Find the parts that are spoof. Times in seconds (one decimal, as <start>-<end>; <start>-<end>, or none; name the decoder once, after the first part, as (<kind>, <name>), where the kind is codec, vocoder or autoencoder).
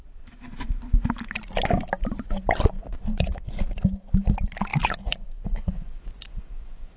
2.8-3.5 (vocoder, Vocos); 4.7-7.0